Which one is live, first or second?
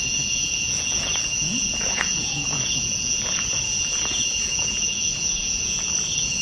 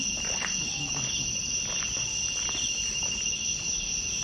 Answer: second